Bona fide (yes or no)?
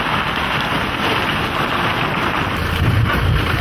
yes